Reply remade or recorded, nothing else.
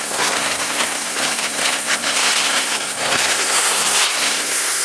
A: remade